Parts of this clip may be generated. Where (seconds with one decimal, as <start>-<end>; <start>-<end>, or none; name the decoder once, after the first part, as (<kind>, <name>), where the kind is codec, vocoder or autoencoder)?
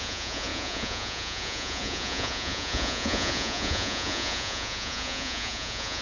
0.0-6.0 (vocoder, Vocos)